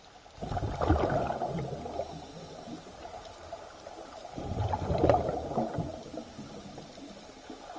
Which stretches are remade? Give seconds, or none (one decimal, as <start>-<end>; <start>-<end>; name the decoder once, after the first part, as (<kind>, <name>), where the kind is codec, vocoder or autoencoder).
2.7-7.0 (vocoder, BigVGAN v2)